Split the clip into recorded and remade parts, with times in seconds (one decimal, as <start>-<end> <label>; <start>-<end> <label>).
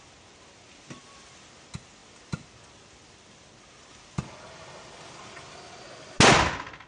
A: 0.0-6.9 recorded